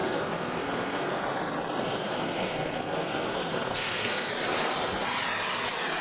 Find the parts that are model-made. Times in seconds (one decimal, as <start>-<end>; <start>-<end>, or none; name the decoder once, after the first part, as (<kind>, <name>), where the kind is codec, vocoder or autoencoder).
0.0-1.2 (codec, SNAC); 2.0-4.3